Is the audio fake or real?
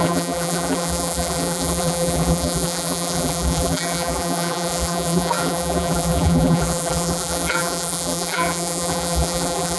fake